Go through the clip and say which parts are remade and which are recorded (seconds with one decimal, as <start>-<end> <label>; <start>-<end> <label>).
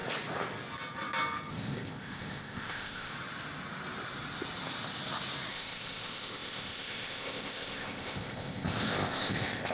0.0-1.5 recorded; 1.5-3.1 remade; 3.1-5.5 recorded; 5.5-9.7 remade